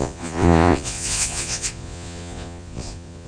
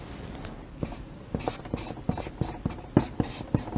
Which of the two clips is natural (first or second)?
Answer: second